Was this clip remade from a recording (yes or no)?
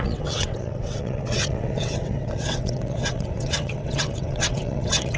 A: yes